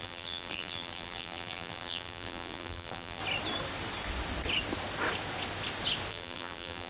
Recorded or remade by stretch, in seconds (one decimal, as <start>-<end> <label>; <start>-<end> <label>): 0.0-3.2 remade; 3.2-6.1 recorded; 6.1-6.9 remade